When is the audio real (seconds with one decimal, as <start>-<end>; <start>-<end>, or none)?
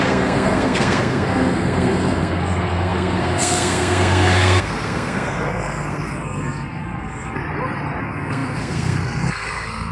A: 7.4-8.0